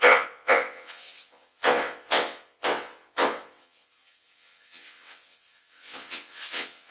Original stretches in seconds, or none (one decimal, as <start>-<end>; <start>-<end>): none

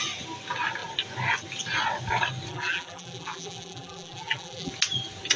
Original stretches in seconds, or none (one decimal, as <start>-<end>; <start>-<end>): 0.0-2.5; 4.7-5.4

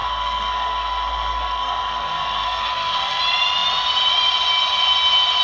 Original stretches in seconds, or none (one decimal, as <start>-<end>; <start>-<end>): 3.2-5.4

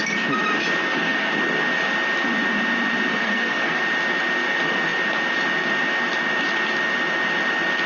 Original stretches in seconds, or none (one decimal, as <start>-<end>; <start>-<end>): 0.0-0.8; 1.3-3.1; 3.8-7.9

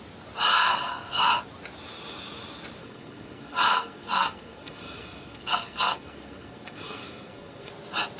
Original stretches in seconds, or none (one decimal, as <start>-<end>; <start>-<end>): 0.0-0.5; 1.4-2.8; 7.7-8.2

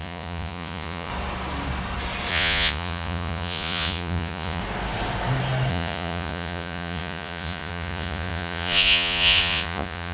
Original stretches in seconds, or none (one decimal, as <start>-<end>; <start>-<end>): 1.1-2.3; 4.6-5.7

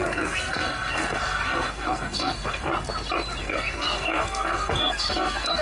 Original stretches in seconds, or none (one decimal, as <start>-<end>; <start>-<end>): 2.7-3.4